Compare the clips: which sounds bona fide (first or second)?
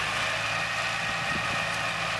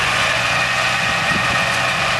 first